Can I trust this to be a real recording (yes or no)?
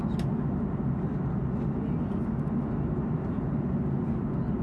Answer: yes